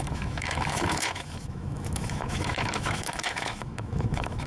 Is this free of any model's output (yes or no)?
no